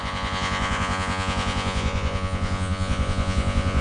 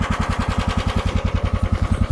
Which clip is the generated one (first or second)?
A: first